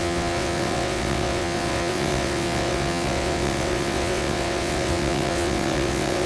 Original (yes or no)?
no